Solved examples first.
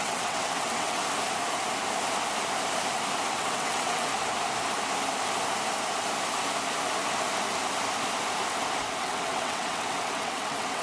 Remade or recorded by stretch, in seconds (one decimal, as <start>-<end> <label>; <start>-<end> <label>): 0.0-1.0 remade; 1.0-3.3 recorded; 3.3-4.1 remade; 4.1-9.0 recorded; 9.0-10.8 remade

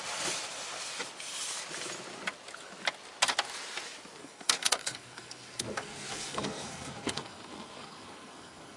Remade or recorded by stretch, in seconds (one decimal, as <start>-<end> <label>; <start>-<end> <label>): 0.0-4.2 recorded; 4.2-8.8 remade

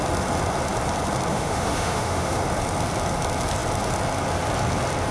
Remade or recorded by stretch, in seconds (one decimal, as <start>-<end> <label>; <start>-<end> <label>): 0.0-1.3 recorded; 1.3-2.4 remade; 2.4-5.1 recorded